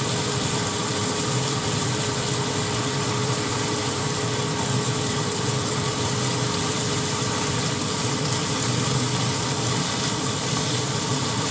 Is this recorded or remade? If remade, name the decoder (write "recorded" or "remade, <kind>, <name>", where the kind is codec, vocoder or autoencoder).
remade, vocoder, BigVGAN v2